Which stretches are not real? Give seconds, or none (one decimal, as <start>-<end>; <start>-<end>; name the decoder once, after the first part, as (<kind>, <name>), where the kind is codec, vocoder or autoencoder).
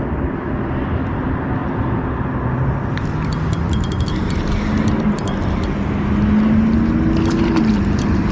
none